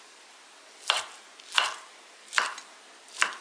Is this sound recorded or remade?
recorded